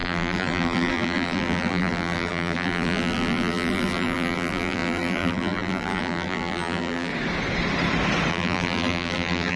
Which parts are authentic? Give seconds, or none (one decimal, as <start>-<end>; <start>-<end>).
7.1-8.3